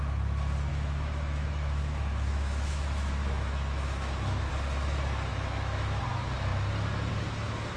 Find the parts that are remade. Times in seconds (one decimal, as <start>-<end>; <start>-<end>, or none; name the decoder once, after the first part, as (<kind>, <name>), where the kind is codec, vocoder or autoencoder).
0.7-4.5 (autoencoder, DAC-VAE); 5.3-6.0